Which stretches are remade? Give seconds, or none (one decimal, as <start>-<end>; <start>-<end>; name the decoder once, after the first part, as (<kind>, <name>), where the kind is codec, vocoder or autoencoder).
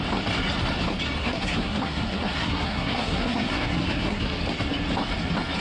1.2-4.4 (codec, SNAC)